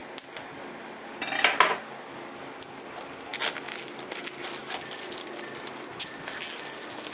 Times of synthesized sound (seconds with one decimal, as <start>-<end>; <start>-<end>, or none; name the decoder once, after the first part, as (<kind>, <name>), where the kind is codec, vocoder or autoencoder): none